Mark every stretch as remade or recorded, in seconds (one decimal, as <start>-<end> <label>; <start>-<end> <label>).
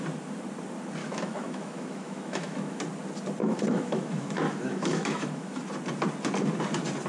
0.0-1.0 recorded; 1.0-2.8 remade; 2.8-3.4 recorded; 3.4-5.6 remade; 5.6-7.1 recorded